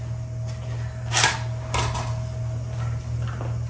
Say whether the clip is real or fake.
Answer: real